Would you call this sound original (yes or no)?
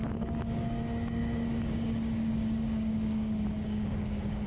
no